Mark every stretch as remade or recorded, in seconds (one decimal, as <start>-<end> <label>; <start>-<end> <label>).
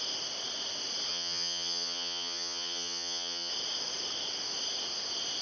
0.0-1.1 recorded; 1.1-3.5 remade; 3.5-5.4 recorded